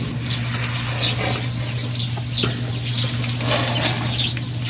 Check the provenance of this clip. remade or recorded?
recorded